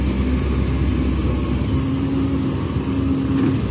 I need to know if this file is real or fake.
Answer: real